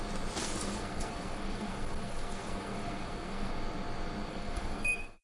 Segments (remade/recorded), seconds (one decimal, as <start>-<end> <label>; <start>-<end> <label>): 0.0-0.4 recorded; 0.4-3.5 remade; 3.5-4.3 recorded; 4.3-5.2 remade

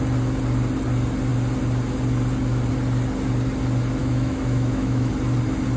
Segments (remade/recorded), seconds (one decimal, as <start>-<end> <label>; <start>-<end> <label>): 0.0-4.0 recorded; 4.0-5.1 remade; 5.1-5.8 recorded

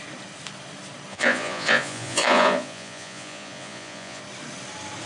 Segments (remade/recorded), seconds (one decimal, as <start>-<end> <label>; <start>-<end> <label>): 0.0-1.1 recorded; 1.1-4.2 remade; 4.2-5.1 recorded

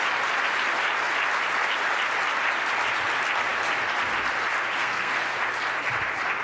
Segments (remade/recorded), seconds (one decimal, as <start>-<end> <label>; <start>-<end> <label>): 0.0-4.8 recorded; 4.8-5.4 remade; 5.4-6.4 recorded

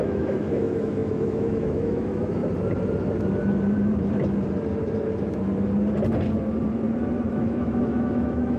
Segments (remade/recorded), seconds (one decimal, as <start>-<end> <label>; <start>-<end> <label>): 0.0-2.4 remade; 2.4-7.3 recorded; 7.3-8.6 remade